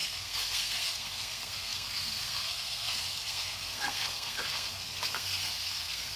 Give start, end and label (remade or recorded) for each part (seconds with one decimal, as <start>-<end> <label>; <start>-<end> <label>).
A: 0.0-6.2 remade